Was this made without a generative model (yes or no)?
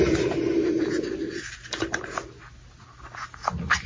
yes